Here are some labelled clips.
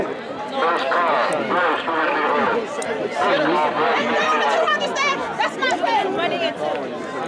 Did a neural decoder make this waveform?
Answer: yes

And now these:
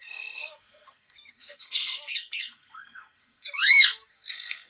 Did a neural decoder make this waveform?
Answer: yes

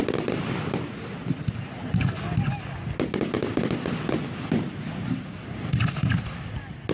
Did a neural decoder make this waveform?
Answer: no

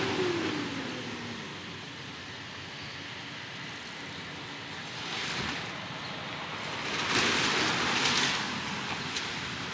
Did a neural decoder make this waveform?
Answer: no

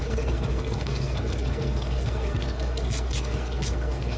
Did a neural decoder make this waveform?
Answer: yes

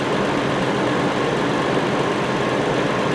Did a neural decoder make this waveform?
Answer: no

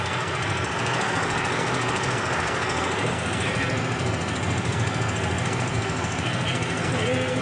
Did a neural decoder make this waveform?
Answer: yes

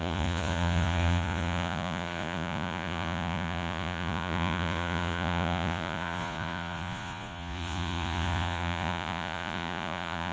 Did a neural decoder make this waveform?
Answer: yes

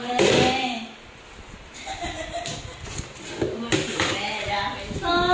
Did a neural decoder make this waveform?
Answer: no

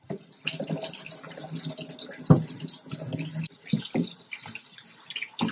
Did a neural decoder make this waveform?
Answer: no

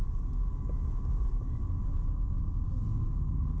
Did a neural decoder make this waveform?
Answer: no